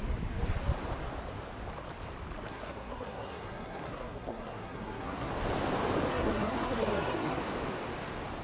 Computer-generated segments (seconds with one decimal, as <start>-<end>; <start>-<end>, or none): 2.5-5.3; 6.1-7.4